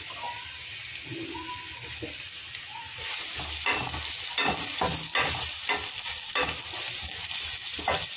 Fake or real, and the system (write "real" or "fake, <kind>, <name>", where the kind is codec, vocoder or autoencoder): real